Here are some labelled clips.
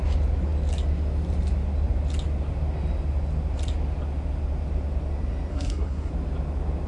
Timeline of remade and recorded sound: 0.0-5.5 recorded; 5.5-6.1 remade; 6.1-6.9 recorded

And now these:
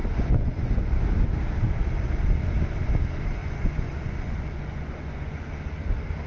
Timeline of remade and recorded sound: 0.0-1.0 remade; 1.0-3.4 recorded; 3.4-5.5 remade; 5.5-6.3 recorded

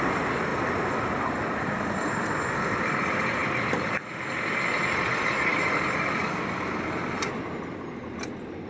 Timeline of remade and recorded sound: 0.0-8.7 recorded